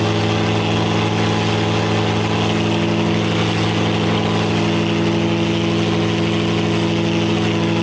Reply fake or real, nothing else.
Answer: real